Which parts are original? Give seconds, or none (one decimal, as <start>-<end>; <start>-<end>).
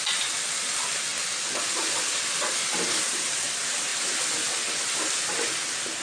0.0-6.0